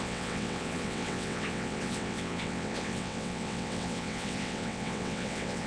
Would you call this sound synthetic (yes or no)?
yes